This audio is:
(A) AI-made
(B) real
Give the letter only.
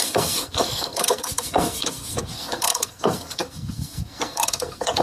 A